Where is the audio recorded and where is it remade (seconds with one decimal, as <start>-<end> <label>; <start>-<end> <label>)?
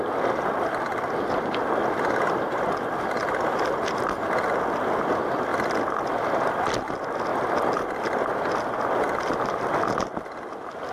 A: 0.0-5.5 recorded; 5.5-6.1 remade; 6.1-7.3 recorded; 7.3-8.3 remade; 8.3-10.9 recorded